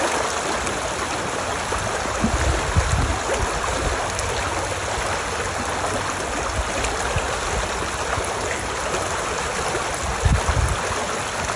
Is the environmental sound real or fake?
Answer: real